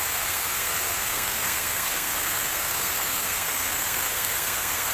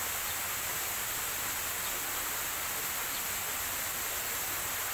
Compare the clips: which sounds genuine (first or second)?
second